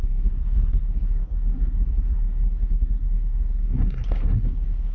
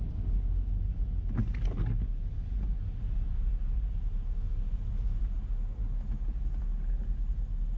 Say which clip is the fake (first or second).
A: first